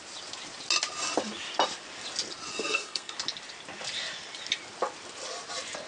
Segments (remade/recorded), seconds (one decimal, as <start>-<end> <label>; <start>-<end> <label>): 0.0-2.5 recorded; 2.5-3.1 remade; 3.1-5.9 recorded